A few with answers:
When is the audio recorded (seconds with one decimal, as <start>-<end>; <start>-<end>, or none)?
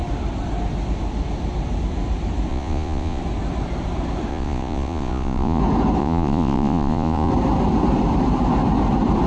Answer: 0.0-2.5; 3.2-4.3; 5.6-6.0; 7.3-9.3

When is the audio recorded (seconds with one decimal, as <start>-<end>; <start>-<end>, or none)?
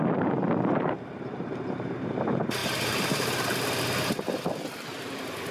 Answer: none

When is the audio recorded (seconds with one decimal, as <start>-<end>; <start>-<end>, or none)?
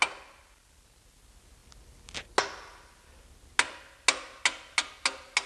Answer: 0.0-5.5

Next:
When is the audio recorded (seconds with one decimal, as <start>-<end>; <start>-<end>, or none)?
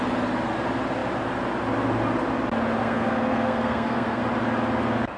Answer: 0.0-2.8; 4.2-5.2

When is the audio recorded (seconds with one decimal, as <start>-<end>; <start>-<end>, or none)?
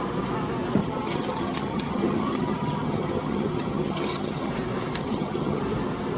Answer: 0.0-0.8; 4.5-5.0; 5.6-6.2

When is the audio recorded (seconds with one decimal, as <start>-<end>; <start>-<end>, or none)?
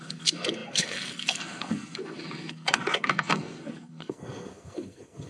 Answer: none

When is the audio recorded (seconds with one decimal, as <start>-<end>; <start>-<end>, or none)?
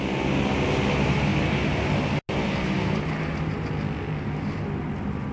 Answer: 0.0-5.3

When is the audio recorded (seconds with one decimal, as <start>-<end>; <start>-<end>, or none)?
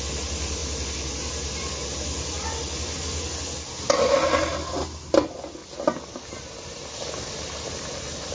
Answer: 0.0-8.3